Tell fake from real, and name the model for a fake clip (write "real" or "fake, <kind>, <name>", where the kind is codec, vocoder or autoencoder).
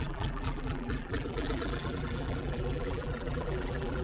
fake, vocoder, BigVGAN v2